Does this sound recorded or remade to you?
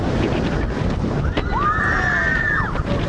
recorded